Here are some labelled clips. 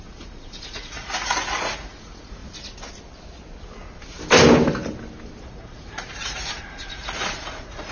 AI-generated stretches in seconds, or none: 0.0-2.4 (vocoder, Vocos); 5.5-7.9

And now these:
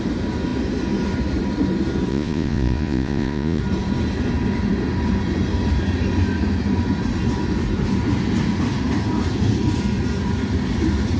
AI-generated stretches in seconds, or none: 2.1-3.6 (vocoder, Vocos)

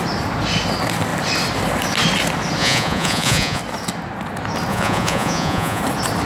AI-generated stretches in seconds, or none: 2.6-3.6 (vocoder, Vocos); 4.7-5.8

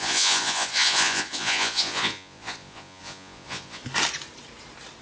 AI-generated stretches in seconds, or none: 0.0-3.8 (vocoder, Vocos)

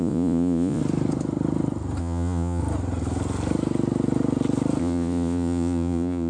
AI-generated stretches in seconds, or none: 0.0-0.8 (vocoder, Vocos); 2.0-2.6; 4.8-6.3

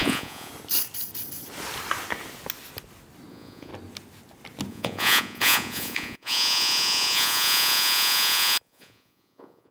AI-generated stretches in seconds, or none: 0.0-0.5 (vocoder, Vocos); 3.3-3.7; 4.7-9.7

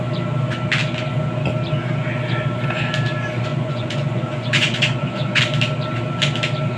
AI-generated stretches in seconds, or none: 3.5-5.4 (vocoder, Vocos)